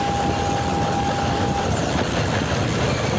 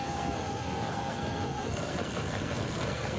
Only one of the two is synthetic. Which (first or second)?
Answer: second